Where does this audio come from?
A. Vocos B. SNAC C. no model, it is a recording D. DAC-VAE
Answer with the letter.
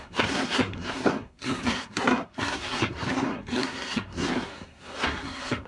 B